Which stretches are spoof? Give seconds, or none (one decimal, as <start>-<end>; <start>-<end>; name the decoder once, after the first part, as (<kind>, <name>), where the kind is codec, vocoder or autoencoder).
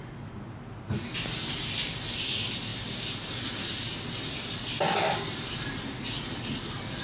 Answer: none